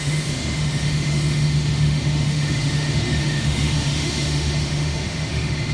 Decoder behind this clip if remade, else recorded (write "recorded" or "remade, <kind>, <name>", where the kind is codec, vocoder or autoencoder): remade, autoencoder, DAC-VAE